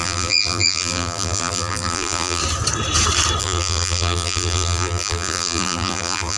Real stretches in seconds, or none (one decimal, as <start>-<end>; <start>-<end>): 2.4-3.4